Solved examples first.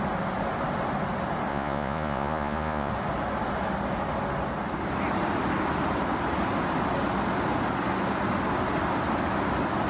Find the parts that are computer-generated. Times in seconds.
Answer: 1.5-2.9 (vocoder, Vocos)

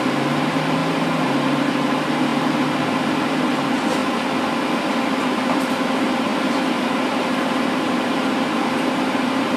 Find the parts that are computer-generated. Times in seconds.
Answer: 0.0-4.0 (vocoder, BigVGAN v2); 5.1-6.3; 6.8-9.6

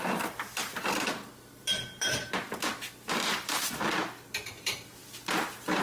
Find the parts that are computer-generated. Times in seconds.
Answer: 0.6-3.9 (vocoder, BigVGAN v2)

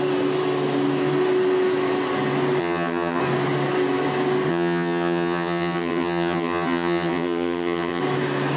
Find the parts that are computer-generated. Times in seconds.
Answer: 2.6-3.2 (vocoder, HiFi-GAN); 4.5-8.0

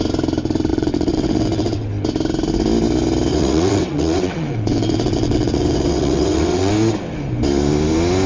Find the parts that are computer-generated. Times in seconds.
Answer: 0.7-1.9 (vocoder, WaveNeXt); 3.3-6.7

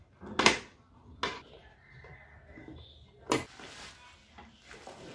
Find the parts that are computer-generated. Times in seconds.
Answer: none